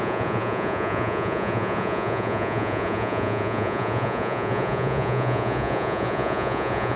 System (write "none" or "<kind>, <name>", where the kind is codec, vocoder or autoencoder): vocoder, Vocos